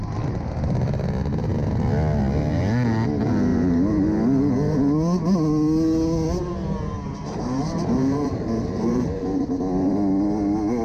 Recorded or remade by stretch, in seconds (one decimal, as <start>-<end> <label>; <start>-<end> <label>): 0.0-7.1 recorded; 7.1-9.2 remade; 9.2-10.8 recorded